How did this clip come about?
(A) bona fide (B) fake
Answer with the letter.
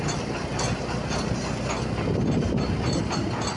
A